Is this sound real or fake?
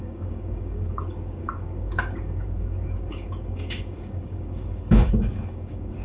fake